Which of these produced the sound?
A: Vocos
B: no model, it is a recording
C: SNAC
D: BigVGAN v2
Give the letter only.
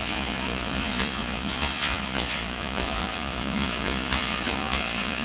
A